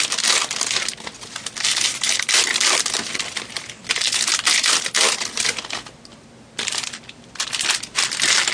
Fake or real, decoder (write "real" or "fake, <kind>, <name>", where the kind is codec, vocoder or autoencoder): real